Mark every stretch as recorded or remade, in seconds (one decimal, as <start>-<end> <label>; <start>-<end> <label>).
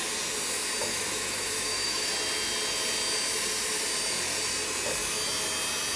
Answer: 0.0-0.8 recorded; 0.8-2.1 remade; 2.1-6.0 recorded